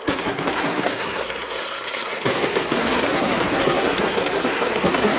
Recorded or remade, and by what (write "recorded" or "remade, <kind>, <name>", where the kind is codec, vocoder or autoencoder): remade, codec, SNAC